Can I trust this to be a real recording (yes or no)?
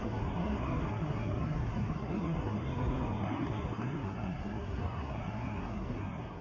no